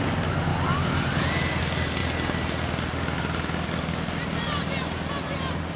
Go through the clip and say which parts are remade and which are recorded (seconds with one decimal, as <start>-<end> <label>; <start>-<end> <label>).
0.0-5.8 recorded